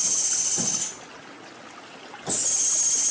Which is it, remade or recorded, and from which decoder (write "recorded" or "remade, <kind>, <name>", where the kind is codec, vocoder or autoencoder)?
recorded